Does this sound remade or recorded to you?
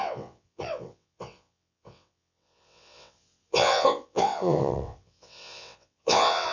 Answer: remade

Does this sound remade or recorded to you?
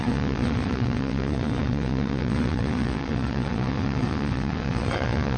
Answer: remade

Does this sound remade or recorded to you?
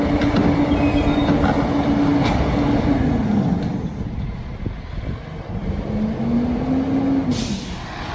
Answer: recorded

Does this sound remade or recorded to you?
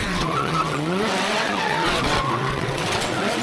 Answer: remade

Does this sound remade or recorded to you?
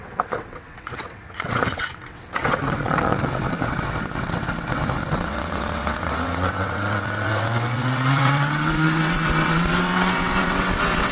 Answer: remade